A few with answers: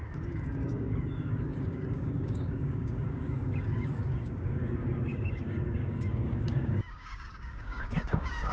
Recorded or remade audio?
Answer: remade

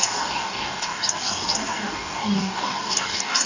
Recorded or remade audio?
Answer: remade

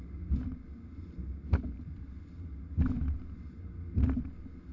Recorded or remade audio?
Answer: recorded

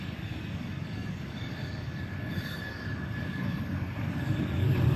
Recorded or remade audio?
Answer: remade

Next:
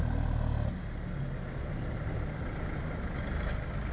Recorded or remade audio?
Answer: recorded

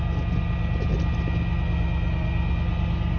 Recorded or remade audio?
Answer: recorded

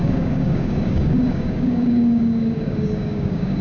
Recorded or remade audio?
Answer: remade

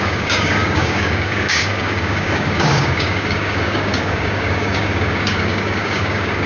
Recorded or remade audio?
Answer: remade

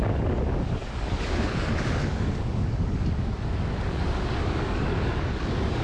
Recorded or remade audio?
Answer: remade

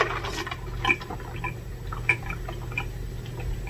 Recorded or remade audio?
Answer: recorded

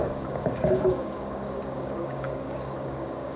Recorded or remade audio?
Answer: remade